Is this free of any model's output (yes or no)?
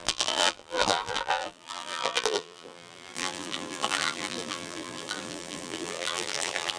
no